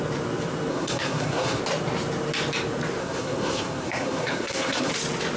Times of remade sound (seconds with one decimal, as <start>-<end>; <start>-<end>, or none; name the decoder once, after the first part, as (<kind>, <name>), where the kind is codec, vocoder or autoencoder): 0.7-1.6 (codec, SNAC); 3.0-4.9